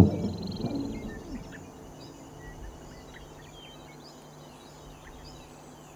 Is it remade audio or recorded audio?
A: recorded